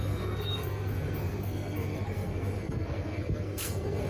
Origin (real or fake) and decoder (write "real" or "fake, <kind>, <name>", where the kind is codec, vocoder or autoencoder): fake, codec, SNAC